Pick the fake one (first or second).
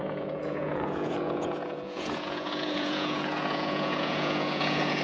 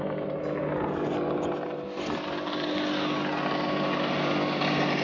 first